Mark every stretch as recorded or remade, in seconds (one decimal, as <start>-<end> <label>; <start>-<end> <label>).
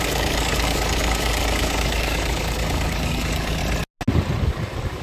0.0-3.6 remade; 3.6-4.4 recorded; 4.4-5.0 remade